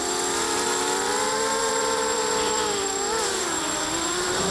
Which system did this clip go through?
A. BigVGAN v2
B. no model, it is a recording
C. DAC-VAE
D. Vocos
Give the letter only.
A